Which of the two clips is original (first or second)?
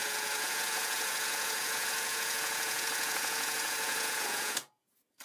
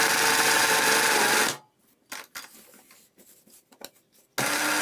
second